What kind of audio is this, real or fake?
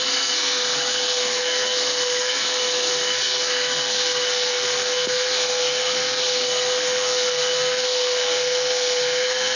fake